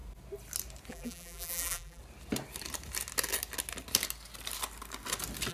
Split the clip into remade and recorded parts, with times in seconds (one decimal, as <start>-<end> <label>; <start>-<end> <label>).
0.0-0.9 recorded; 0.9-2.0 remade; 2.0-5.5 recorded